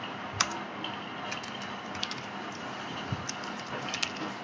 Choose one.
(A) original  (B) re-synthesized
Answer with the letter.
A